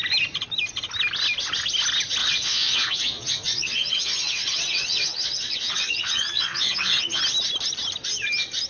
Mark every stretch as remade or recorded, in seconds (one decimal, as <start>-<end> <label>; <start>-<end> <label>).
0.0-2.2 recorded; 2.2-7.2 remade; 7.2-8.7 recorded